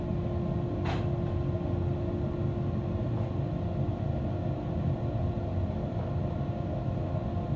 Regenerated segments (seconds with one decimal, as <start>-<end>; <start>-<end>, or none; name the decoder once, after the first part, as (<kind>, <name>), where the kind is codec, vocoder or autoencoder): none